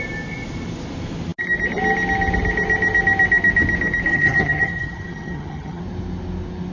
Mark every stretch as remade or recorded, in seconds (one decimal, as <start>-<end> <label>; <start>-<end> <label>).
0.0-4.1 recorded; 4.1-5.8 remade; 5.8-6.7 recorded